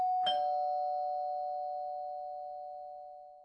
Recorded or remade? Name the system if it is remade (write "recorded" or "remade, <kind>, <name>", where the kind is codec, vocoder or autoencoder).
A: recorded